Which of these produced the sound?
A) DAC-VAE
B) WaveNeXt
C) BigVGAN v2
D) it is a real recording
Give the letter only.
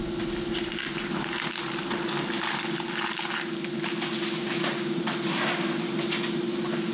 D